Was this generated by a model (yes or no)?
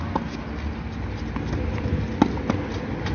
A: no